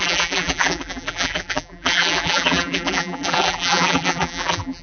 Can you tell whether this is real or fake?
fake